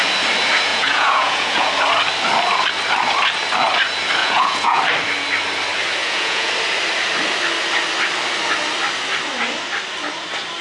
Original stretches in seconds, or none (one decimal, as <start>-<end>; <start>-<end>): 0.0-0.7; 1.7-4.2; 4.8-6.0; 6.5-10.6